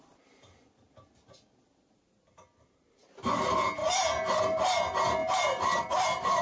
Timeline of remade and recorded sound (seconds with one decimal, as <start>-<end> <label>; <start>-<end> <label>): 0.0-3.8 recorded; 3.8-4.4 remade; 4.4-5.2 recorded; 5.2-6.4 remade